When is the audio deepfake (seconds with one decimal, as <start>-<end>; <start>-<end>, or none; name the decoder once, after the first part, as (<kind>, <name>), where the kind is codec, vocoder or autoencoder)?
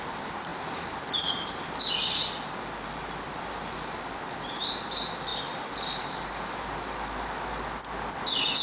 none